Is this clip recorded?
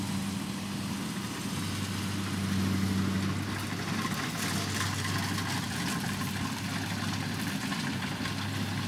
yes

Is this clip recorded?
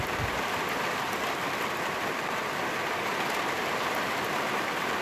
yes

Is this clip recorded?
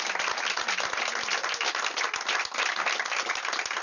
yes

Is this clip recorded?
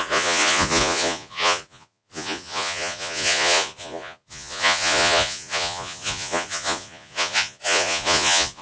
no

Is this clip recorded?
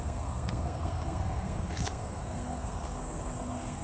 no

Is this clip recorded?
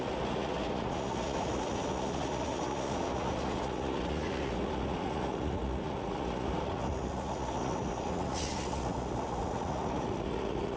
no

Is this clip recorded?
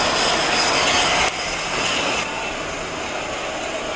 yes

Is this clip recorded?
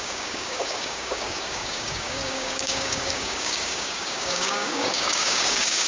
no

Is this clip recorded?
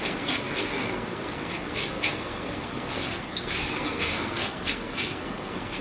no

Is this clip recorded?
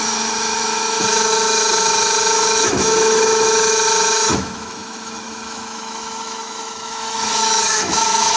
no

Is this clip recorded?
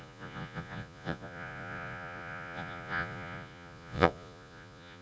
no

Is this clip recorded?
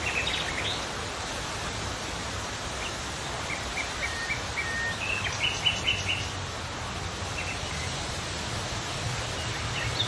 yes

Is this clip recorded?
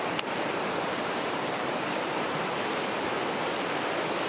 yes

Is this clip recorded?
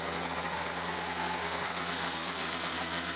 no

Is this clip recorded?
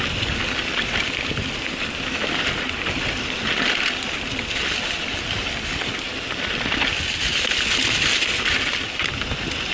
yes